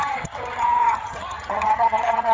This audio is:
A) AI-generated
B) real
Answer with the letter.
A